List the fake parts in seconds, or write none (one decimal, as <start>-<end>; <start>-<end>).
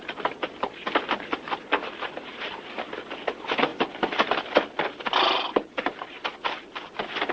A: 0.0-7.3